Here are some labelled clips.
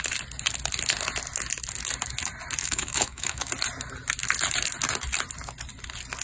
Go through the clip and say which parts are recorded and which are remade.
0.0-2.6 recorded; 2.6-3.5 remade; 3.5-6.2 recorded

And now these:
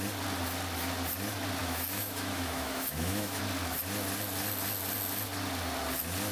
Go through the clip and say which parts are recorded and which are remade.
0.0-1.6 recorded; 1.6-3.4 remade; 3.4-6.3 recorded